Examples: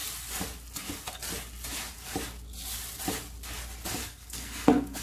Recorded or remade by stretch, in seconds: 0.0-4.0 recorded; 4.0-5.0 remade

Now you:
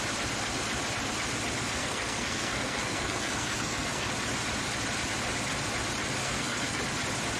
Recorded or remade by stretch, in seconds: 0.0-1.8 recorded; 1.8-4.1 remade; 4.1-6.2 recorded; 6.2-6.8 remade; 6.8-7.4 recorded

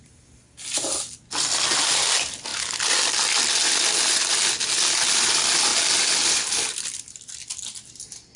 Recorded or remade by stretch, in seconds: 0.0-8.4 recorded

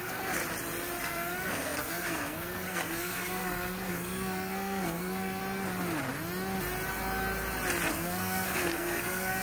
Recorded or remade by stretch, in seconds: 0.0-0.4 remade; 0.4-1.0 recorded; 1.0-5.4 remade; 5.4-7.9 recorded; 7.9-9.4 remade

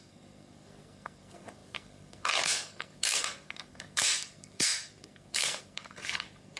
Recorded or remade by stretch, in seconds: 0.0-6.6 remade

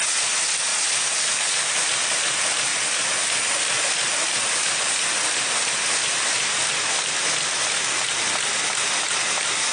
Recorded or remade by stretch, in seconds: 0.0-9.7 recorded

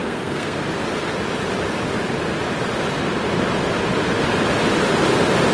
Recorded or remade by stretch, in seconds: 0.0-0.6 remade; 0.6-5.5 recorded

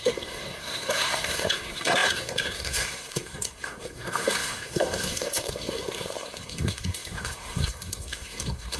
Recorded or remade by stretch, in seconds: 0.0-8.8 remade